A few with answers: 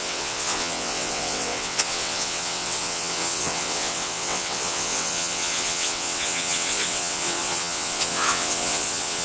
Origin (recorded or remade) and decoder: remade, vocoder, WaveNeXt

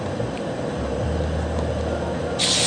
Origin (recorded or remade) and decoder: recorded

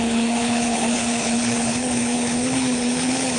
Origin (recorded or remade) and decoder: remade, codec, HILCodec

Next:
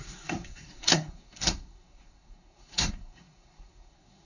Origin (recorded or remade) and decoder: remade, codec, SNAC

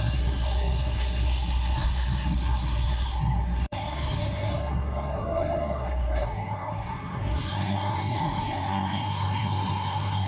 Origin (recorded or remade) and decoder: remade, codec, SNAC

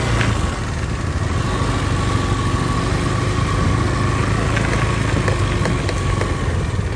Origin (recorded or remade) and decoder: recorded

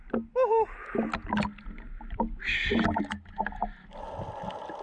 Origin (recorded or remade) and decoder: recorded